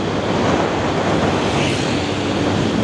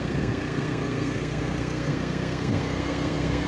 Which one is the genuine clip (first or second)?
first